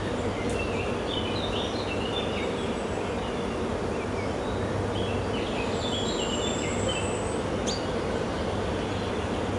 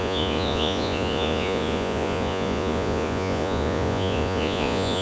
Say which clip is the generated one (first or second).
second